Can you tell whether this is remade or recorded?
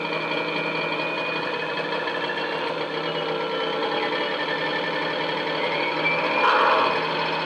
recorded